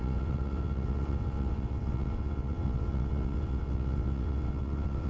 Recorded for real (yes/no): no